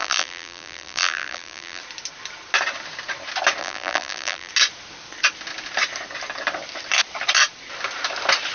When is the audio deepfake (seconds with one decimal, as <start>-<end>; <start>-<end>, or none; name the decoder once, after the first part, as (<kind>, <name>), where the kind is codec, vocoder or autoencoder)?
0.0-1.8 (vocoder, BigVGAN v2); 3.6-4.5